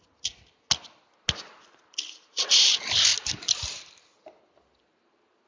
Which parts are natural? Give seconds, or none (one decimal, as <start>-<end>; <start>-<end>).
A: 0.0-5.5